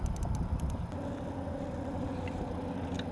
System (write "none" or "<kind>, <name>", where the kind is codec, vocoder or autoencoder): none